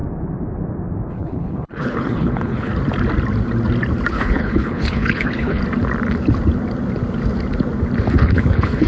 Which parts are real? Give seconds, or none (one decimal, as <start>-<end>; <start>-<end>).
0.0-1.1; 2.7-4.1; 5.6-8.1